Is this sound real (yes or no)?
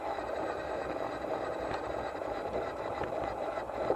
no